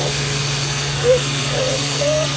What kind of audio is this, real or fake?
fake